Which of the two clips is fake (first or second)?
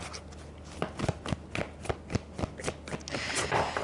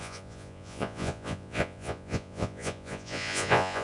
second